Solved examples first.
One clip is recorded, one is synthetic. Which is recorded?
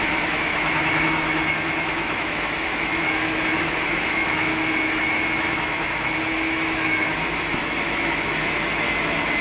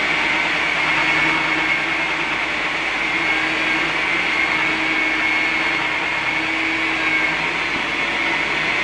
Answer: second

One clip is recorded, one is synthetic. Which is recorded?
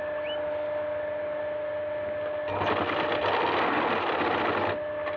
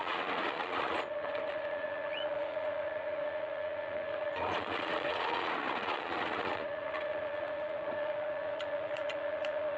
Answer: first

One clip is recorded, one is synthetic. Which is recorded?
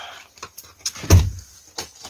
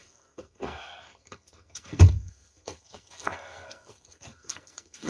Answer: first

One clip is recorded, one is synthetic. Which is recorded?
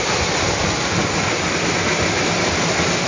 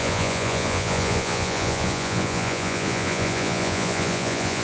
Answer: first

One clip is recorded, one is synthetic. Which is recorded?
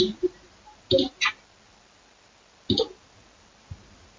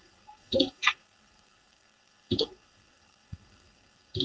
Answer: first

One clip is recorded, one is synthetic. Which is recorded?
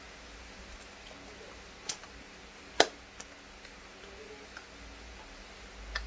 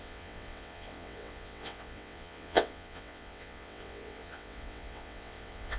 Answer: first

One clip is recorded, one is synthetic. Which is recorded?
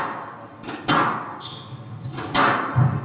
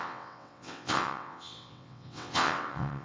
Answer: first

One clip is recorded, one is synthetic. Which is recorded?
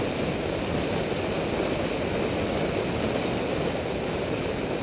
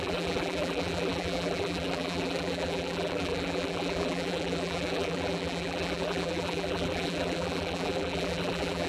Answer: first